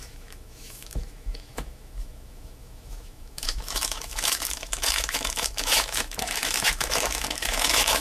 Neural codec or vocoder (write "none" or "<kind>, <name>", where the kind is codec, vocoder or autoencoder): autoencoder, DAC-VAE